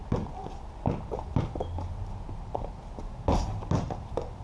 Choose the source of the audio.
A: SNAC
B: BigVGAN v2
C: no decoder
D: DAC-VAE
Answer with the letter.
C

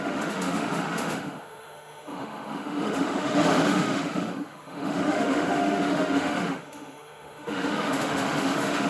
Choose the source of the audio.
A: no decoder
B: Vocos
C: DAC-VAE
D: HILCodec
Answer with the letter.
C